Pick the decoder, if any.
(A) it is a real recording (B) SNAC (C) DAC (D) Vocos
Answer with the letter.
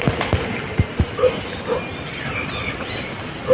A